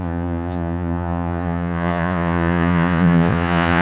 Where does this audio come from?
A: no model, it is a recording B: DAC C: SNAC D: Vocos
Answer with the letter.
D